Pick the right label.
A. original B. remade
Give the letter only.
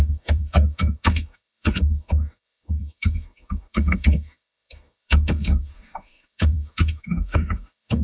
B